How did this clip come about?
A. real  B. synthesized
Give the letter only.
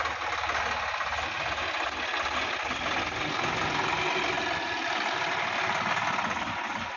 A